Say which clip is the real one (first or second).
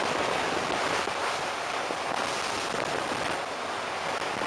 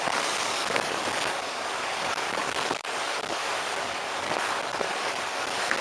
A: first